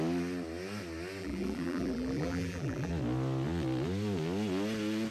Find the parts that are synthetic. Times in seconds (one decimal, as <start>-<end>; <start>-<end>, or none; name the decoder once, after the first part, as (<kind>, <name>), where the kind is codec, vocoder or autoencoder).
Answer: 1.2-2.9 (vocoder, BigVGAN v2)